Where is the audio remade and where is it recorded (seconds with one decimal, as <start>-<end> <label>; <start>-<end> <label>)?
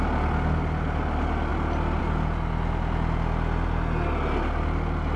0.0-5.2 recorded